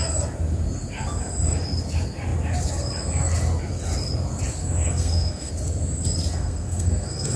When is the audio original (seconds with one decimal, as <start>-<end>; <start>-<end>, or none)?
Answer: 0.0-4.6; 5.5-6.3